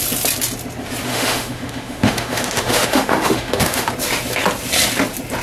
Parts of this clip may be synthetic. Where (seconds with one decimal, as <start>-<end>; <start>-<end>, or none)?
1.1-3.9

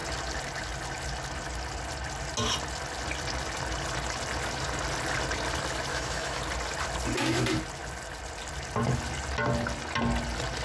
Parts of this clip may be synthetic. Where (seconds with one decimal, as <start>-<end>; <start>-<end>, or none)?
5.9-6.4

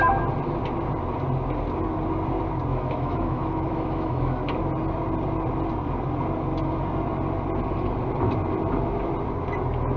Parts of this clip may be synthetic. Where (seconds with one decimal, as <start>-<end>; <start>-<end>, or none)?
2.7-4.4

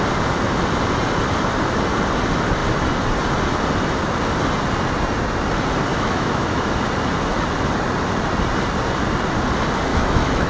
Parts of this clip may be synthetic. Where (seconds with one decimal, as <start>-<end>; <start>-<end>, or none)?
5.9-6.7; 9.9-10.5